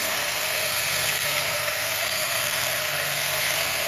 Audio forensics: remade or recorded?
remade